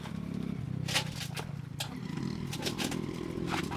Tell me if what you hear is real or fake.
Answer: real